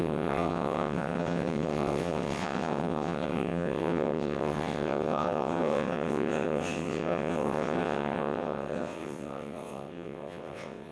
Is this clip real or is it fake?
fake